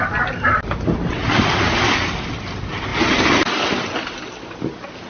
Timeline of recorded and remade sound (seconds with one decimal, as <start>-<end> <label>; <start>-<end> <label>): 0.0-5.1 recorded